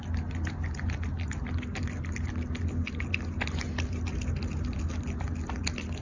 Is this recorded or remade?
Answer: recorded